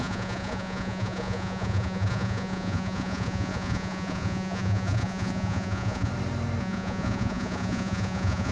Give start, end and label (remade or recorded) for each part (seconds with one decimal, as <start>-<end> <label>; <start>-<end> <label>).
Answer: 0.0-6.1 remade; 6.1-6.6 recorded; 6.6-8.5 remade